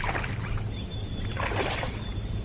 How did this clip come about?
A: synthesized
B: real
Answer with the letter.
B